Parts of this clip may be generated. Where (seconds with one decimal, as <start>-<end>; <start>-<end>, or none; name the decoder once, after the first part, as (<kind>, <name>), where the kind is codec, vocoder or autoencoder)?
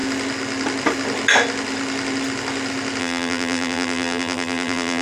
3.0-5.0 (vocoder, BigVGAN v2)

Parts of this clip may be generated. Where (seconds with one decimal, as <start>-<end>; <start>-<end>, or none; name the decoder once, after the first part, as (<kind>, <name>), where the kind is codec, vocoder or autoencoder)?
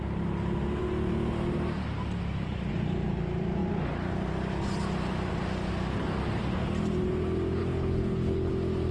7.6-8.5 (codec, HILCodec)